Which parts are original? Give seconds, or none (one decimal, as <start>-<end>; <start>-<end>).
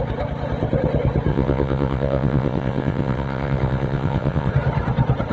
0.0-1.3; 4.5-5.3